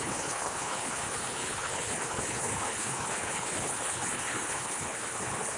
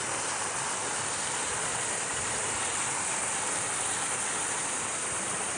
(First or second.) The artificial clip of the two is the first